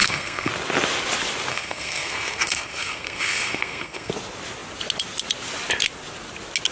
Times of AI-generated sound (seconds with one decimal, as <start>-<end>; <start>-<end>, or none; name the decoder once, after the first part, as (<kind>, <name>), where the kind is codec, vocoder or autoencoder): 0.0-0.5 (codec, SNAC); 1.5-4.1